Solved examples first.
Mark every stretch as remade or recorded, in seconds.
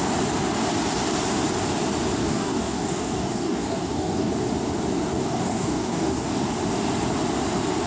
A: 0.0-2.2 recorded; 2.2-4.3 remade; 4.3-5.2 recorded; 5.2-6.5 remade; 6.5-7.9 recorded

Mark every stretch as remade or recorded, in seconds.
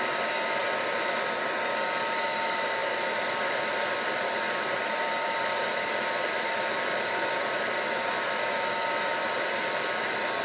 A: 0.0-10.4 recorded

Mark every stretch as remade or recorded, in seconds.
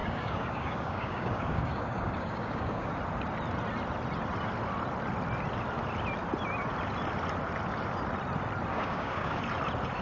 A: 0.0-2.9 remade; 2.9-8.7 recorded; 8.7-9.4 remade; 9.4-10.0 recorded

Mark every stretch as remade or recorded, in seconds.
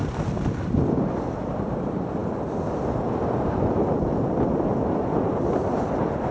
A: 0.0-6.3 recorded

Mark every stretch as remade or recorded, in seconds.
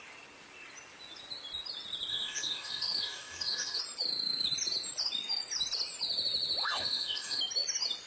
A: 0.0-2.1 recorded; 2.1-3.8 remade; 3.8-6.6 recorded; 6.6-7.4 remade; 7.4-8.1 recorded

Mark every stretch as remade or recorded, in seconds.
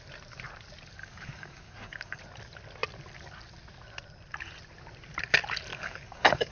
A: 0.0-1.0 recorded; 1.0-2.2 remade; 2.2-5.7 recorded; 5.7-6.5 remade